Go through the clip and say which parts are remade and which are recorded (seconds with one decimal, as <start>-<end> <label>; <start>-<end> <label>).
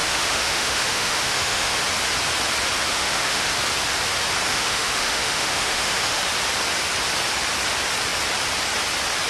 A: 0.0-1.8 remade; 1.8-2.9 recorded; 2.9-3.5 remade; 3.5-4.5 recorded; 4.5-6.2 remade; 6.2-9.3 recorded